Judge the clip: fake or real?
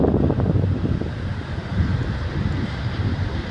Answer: real